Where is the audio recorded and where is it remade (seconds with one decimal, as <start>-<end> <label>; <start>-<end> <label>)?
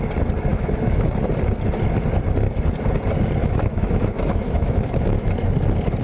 0.0-0.5 recorded; 0.5-1.1 remade; 1.1-3.4 recorded; 3.4-5.3 remade; 5.3-6.0 recorded